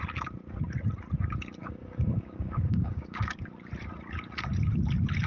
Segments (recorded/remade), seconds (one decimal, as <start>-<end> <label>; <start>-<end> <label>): 0.0-1.6 recorded; 1.6-3.4 remade; 3.4-5.3 recorded